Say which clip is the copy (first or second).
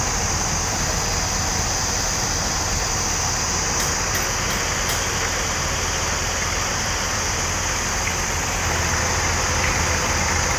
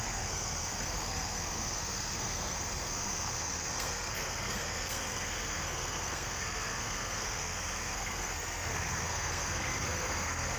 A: second